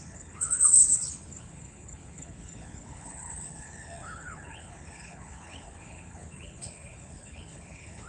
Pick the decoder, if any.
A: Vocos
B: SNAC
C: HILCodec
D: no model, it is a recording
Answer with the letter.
C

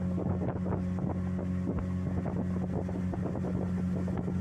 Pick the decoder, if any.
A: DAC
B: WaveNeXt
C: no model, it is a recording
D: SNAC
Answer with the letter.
C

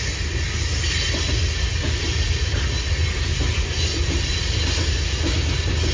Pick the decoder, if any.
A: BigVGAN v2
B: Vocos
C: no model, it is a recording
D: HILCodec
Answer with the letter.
C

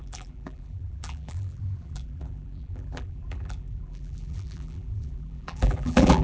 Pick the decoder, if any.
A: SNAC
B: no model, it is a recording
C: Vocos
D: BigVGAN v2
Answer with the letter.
D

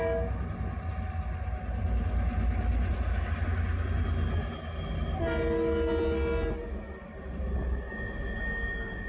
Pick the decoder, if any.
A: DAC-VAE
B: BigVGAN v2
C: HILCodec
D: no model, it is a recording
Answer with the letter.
D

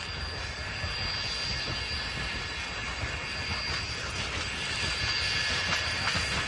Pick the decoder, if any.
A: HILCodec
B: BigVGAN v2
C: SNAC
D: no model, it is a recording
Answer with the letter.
D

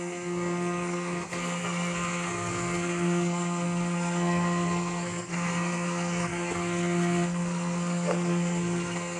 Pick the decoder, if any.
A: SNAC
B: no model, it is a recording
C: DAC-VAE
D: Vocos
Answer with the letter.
A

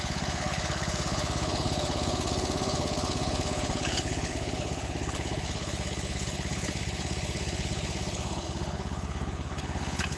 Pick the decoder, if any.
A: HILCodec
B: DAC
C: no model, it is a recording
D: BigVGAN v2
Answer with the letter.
A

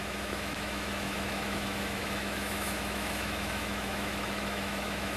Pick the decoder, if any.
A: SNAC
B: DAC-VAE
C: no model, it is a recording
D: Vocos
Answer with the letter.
B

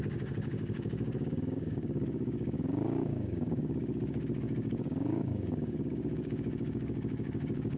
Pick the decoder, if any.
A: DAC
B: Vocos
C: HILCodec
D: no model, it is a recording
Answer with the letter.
A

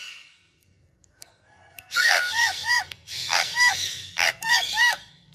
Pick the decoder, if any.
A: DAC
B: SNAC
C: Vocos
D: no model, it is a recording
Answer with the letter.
B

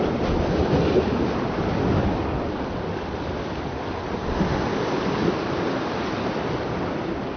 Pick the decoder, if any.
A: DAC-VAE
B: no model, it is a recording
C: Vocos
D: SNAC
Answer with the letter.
B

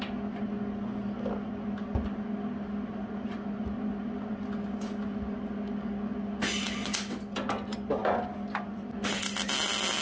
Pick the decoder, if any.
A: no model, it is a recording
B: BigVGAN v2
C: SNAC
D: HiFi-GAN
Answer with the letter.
A